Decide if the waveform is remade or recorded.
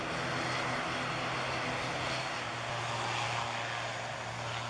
recorded